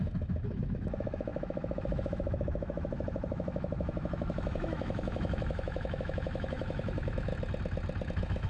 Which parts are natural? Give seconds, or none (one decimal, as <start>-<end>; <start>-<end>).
7.3-8.1

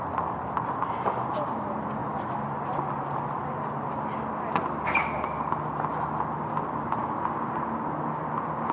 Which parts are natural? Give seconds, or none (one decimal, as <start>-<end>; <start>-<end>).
0.0-8.7

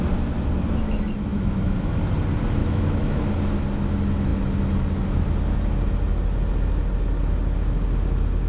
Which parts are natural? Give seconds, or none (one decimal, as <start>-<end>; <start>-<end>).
0.0-1.3; 2.0-2.6; 3.2-8.5

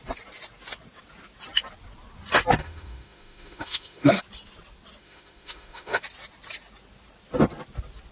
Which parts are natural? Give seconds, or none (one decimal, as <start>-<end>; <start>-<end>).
0.0-2.6; 4.2-5.0; 6.0-8.1

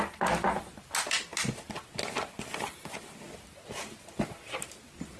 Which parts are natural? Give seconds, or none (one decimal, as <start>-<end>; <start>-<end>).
0.0-5.2

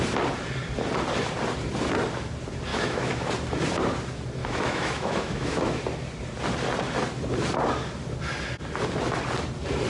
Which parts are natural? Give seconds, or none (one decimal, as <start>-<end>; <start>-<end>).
0.0-2.7; 3.3-4.4; 5.8-9.9